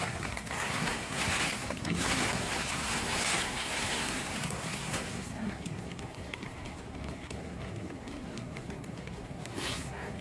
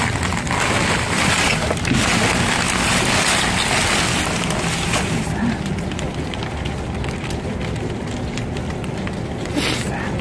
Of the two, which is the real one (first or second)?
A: second